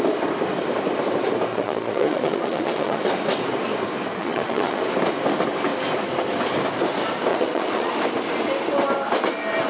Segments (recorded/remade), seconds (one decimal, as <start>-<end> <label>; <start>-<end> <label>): 0.0-1.5 recorded; 1.5-3.0 remade; 3.0-4.2 recorded; 4.2-4.8 remade; 4.8-7.3 recorded; 7.3-7.9 remade; 7.9-9.7 recorded